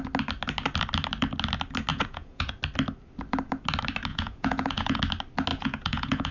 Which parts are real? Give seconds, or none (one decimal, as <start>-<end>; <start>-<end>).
0.0-1.9; 2.6-4.1; 5.0-5.5